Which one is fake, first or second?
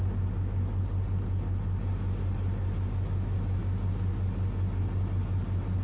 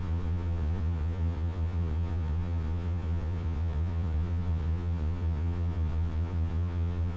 second